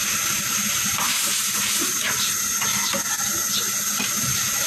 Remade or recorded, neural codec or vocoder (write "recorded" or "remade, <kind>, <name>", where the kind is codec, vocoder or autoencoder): recorded